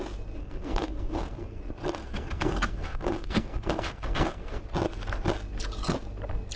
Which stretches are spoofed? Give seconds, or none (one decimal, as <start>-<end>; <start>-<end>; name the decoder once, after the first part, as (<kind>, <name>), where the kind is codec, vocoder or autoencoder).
0.4-1.6 (codec, SNAC); 2.0-4.6